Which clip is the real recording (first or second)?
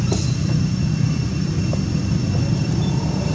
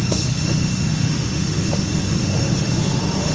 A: first